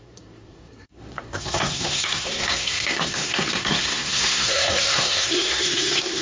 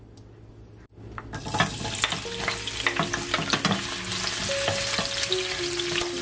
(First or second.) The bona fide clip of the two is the second